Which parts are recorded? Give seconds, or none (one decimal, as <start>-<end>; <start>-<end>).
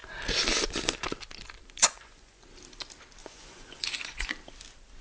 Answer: 0.0-1.8; 2.4-3.2; 4.3-5.0